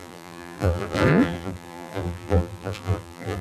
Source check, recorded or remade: remade